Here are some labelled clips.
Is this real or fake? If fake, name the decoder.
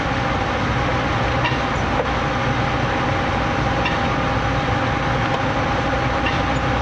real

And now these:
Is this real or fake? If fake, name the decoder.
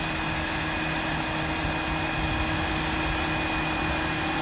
real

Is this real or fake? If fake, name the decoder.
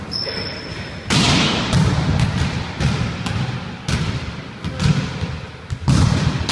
real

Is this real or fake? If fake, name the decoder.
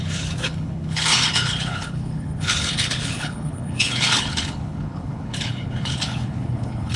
fake, codec, HILCodec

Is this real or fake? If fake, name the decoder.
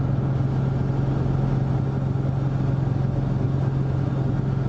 real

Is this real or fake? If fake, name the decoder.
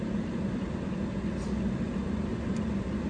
real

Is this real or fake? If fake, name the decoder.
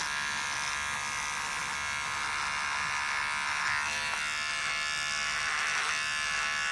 real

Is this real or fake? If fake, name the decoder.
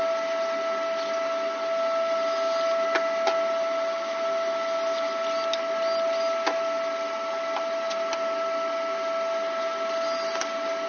real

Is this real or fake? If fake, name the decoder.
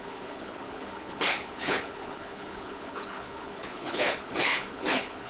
fake, codec, HILCodec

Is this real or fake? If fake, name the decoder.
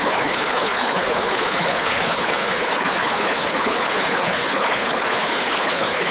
fake, codec, HILCodec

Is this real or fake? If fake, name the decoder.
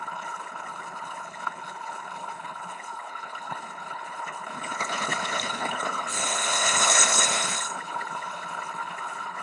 fake, codec, HILCodec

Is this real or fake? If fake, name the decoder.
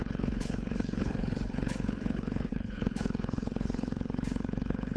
fake, codec, HILCodec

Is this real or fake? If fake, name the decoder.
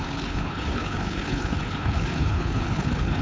fake, codec, HILCodec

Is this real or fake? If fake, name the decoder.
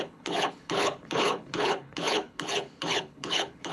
fake, codec, HILCodec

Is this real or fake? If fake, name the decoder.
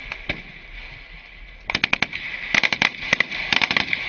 real